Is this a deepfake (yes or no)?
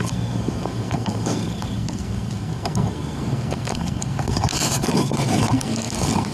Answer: yes